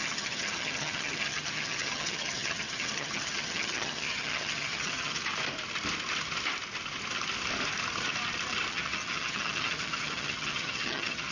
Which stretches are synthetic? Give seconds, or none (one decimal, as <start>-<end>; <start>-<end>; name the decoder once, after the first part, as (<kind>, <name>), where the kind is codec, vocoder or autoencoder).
0.0-5.2 (vocoder, HiFi-GAN); 8.7-11.3